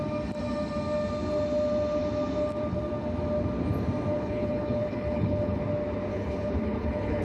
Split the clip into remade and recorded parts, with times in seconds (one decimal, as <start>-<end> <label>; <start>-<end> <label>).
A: 0.0-4.1 recorded; 4.1-5.6 remade; 5.6-6.1 recorded; 6.1-7.2 remade